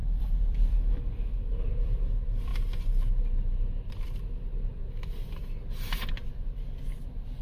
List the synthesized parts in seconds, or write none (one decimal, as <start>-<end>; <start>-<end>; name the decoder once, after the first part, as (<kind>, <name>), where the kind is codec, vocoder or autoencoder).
0.0-2.5 (vocoder, BigVGAN v2); 3.9-4.8; 6.3-7.4